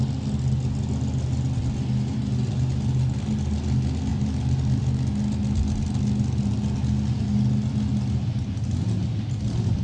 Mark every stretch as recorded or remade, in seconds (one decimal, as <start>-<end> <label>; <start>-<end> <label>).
0.0-4.1 recorded; 4.1-4.8 remade; 4.8-9.8 recorded